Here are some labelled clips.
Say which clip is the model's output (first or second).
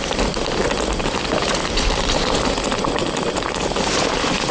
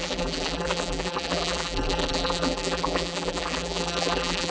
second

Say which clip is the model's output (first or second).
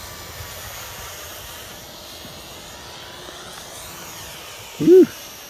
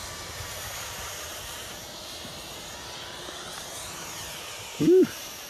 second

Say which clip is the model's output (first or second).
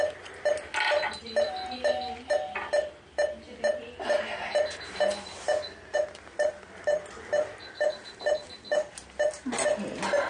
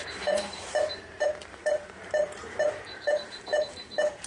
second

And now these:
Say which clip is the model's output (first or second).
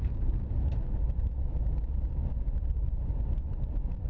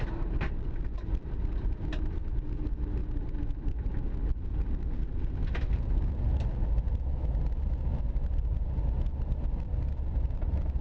first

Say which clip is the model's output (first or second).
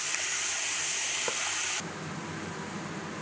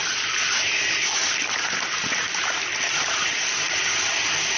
second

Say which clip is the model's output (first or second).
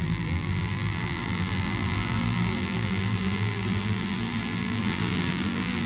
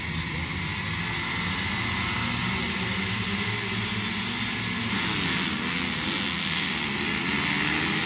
first